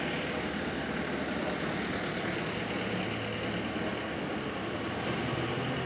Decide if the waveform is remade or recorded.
recorded